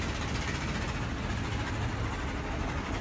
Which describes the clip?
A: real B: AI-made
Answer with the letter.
A